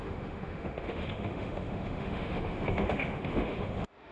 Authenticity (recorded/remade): remade